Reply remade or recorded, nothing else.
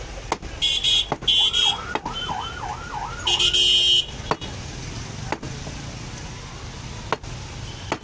recorded